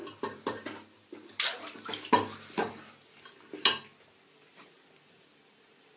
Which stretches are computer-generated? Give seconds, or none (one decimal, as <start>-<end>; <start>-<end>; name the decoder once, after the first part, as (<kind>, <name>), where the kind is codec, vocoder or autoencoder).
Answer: 0.0-3.3 (vocoder, BigVGAN v2)